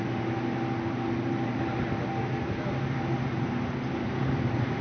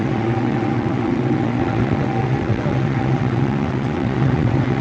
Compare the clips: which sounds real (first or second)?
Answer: first